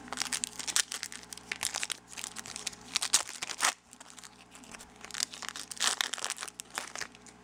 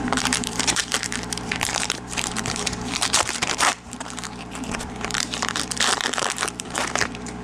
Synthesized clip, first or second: second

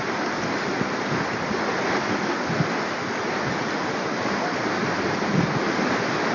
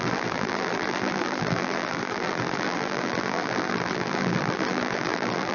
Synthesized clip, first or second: second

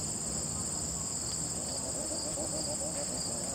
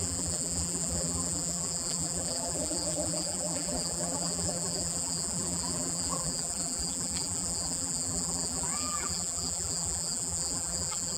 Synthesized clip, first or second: second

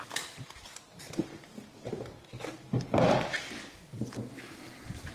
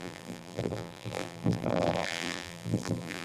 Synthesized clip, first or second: second